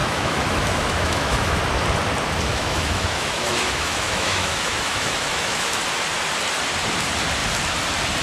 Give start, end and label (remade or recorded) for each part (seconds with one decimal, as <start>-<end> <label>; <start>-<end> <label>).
0.0-1.6 remade; 1.6-2.5 recorded; 2.5-5.8 remade; 5.8-8.2 recorded